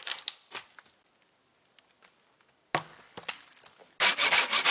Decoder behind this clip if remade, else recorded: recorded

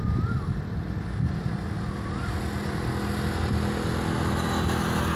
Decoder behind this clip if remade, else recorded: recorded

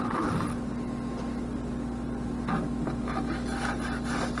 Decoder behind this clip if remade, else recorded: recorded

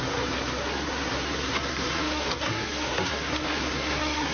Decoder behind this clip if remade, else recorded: remade, codec, SNAC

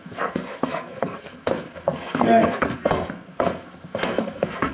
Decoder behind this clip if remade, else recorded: remade, codec, SNAC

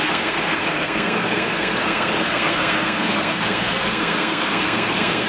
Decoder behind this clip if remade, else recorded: remade, codec, SNAC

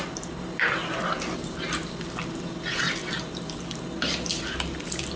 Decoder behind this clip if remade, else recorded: recorded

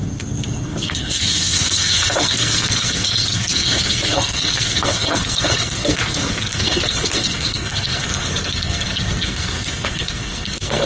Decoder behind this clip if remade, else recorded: remade, codec, SNAC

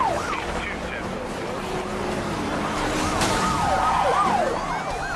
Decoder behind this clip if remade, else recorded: recorded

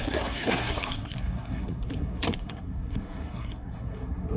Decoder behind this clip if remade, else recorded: remade, codec, SNAC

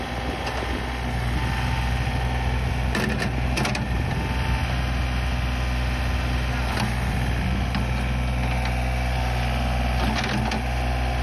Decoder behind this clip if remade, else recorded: recorded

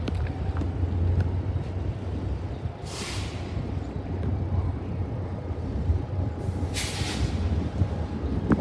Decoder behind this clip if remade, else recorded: recorded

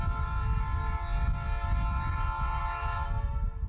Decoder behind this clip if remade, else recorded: recorded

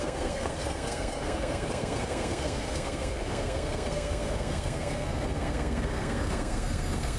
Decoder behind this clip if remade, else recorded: remade, codec, SNAC